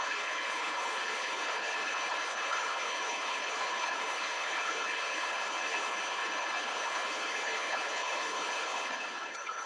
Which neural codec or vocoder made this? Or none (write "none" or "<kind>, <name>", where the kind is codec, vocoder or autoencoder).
codec, HILCodec